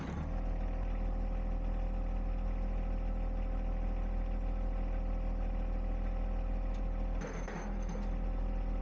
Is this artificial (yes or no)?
no